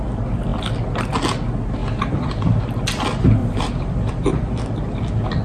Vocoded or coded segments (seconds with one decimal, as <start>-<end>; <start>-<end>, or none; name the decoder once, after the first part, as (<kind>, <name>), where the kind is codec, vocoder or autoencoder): 1.8-2.6 (vocoder, BigVGAN v2); 3.4-4.6